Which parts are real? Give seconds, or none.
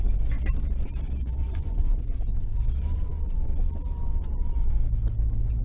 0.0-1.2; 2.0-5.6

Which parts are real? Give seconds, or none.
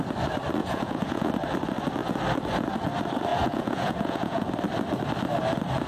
0.0-0.6; 1.3-3.3; 4.5-5.9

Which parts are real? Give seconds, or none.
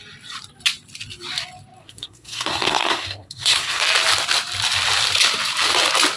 0.0-1.8; 3.8-6.2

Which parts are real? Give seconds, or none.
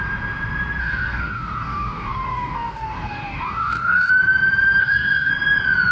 0.0-0.8; 4.1-4.8; 5.3-5.9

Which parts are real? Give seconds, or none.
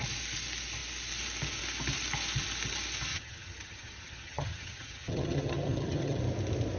0.0-3.1; 6.2-6.8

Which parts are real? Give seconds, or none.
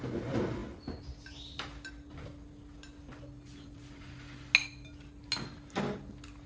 0.0-6.5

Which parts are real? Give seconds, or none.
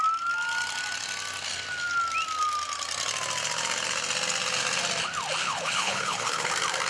0.0-5.4; 6.5-6.9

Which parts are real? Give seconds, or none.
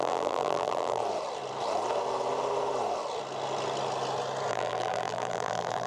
1.0-4.5